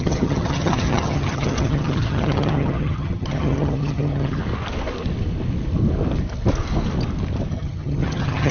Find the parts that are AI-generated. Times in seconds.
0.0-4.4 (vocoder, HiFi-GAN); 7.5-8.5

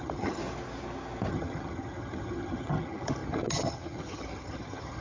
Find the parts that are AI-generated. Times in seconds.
0.0-0.4 (vocoder, HiFi-GAN); 1.3-5.0

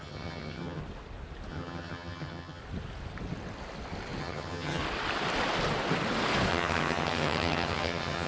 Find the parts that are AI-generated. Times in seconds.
0.0-0.8 (vocoder, HiFi-GAN); 1.5-2.6; 4.2-4.8; 6.5-8.3

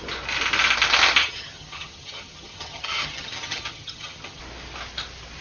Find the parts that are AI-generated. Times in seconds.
1.2-4.4 (vocoder, HiFi-GAN)

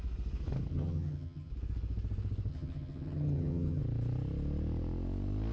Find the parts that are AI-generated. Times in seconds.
0.7-1.5 (vocoder, HiFi-GAN); 2.5-3.8

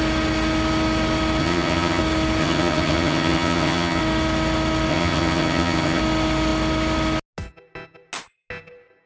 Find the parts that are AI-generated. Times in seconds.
1.4-2.0 (vocoder, HiFi-GAN); 2.4-4.0; 4.9-6.0